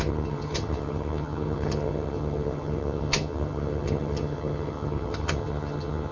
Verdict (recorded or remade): remade